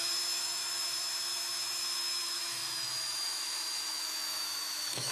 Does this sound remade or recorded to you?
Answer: remade